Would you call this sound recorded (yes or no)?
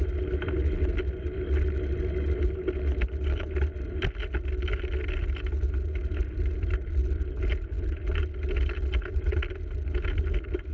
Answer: yes